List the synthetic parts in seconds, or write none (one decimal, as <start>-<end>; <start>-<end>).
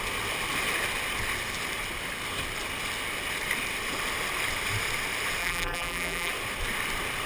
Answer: 5.4-6.3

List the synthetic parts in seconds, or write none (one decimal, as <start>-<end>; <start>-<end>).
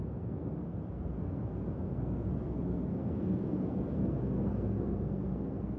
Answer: 0.0-5.8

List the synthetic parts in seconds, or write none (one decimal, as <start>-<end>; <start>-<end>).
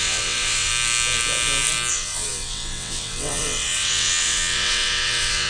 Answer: 0.0-0.7; 1.9-5.5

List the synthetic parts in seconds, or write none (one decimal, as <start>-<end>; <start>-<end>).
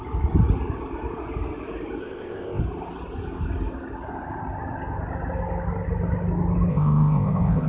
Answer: 2.0-2.6; 6.7-7.7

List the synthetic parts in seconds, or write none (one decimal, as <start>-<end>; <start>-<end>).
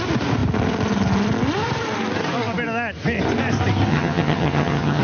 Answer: 3.9-5.0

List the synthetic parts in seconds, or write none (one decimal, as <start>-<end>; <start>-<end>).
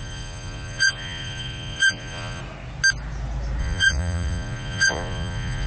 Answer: 0.0-2.4; 3.6-5.7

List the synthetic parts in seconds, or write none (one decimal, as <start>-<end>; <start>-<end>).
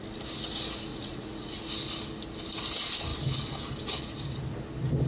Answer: 0.9-1.6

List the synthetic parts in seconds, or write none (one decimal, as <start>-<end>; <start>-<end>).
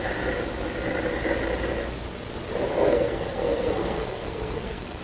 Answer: 2.7-5.0